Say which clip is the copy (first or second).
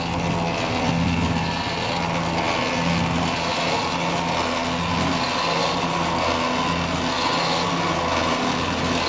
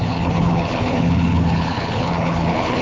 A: second